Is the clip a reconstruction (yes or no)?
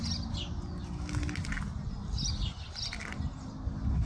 no